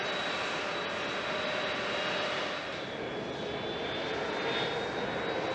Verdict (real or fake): real